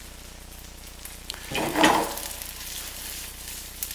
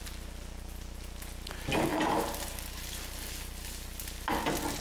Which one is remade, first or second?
first